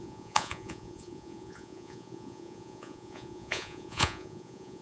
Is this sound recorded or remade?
remade